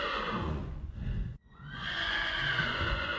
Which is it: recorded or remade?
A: remade